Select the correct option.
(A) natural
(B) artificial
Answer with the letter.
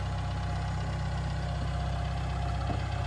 A